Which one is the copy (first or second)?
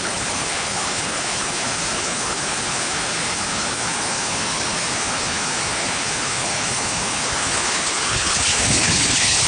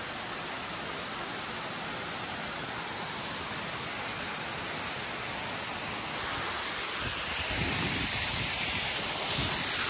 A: first